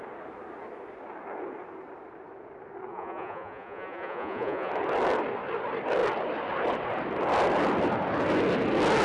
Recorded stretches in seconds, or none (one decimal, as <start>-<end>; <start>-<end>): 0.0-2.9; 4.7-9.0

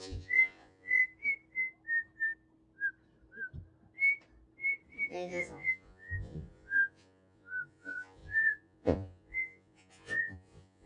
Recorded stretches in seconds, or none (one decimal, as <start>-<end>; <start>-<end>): 1.0-5.1

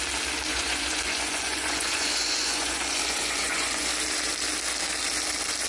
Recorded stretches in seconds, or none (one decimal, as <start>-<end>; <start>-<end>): 0.0-0.5; 3.9-5.7

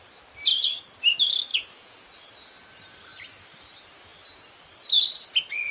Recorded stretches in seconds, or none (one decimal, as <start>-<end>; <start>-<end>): 0.0-1.5; 2.3-5.7